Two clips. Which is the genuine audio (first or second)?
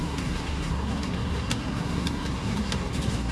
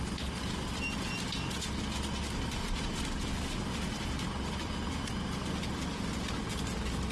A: second